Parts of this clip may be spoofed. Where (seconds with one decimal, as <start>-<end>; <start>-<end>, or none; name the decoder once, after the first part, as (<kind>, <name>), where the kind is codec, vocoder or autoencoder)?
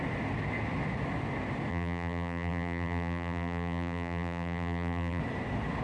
1.7-5.2 (vocoder, BigVGAN v2)